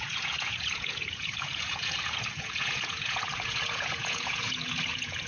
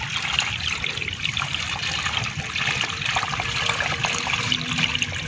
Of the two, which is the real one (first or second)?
second